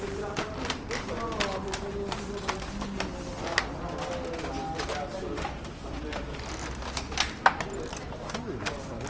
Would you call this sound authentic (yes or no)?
yes